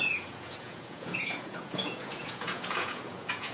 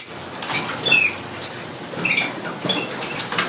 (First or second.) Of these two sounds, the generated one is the first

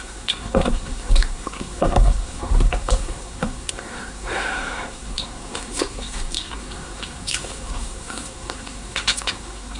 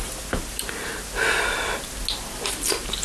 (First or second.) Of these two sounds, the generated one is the first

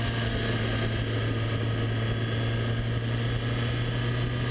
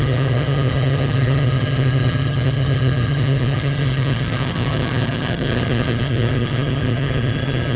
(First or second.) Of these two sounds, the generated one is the second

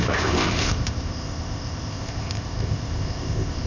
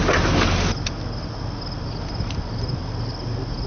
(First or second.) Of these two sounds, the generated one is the first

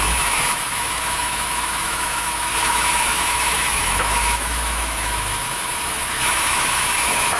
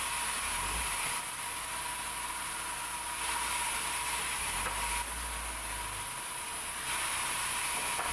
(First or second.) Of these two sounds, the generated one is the first